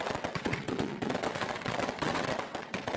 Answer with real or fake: fake